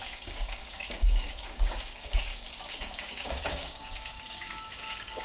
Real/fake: fake